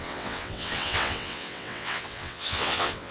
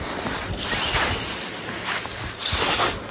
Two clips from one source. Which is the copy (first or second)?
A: first